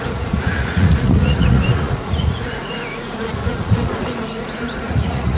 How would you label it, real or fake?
fake